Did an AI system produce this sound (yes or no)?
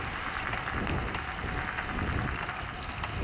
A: no